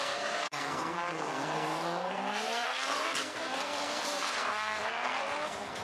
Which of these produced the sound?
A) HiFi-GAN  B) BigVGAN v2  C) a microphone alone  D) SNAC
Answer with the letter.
D